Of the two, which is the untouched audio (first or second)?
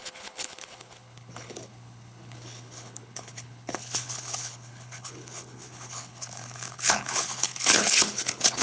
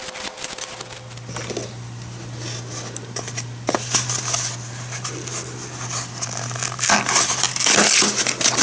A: second